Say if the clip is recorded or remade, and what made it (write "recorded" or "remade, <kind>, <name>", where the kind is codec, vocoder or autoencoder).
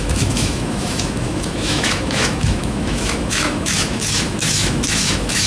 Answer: remade, autoencoder, DAC-VAE